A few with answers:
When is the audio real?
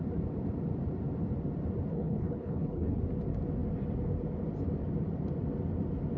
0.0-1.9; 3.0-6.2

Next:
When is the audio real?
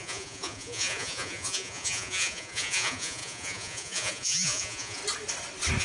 5.0-5.8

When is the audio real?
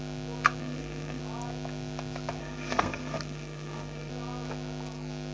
0.0-0.6; 1.2-2.4; 4.1-5.3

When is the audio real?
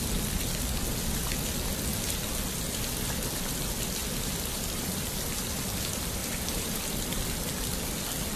0.0-4.0; 5.5-6.2; 7.5-8.4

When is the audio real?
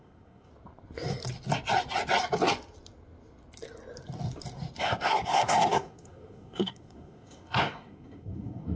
0.5-4.8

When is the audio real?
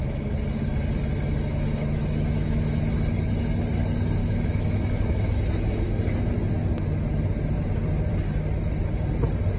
0.0-1.5; 2.8-4.2; 6.0-9.6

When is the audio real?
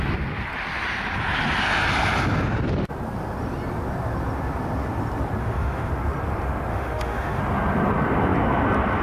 0.0-5.4; 5.9-6.7; 7.4-9.0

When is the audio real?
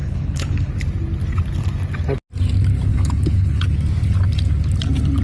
0.7-2.9; 3.6-5.2